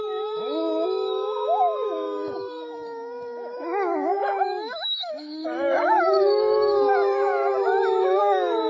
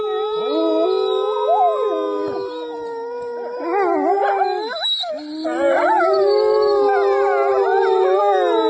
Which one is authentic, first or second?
second